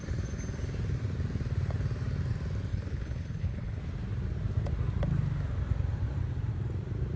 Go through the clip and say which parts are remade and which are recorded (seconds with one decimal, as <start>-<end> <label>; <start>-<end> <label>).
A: 0.0-2.7 recorded; 2.7-3.8 remade; 3.8-7.2 recorded